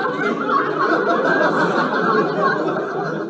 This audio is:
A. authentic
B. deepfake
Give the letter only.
A